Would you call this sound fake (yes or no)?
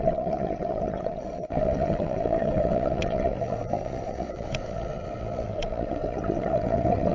yes